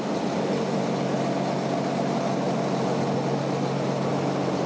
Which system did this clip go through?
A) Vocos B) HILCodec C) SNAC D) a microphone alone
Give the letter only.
D